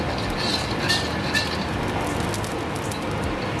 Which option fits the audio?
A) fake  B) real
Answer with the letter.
B